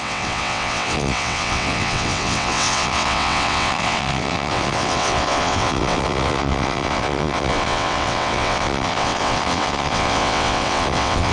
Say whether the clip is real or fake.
fake